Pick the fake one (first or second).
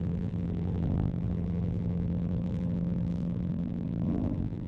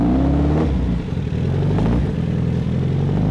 first